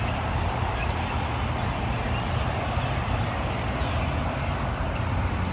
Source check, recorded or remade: recorded